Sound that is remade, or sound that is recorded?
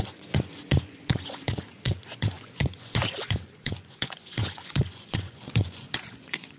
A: remade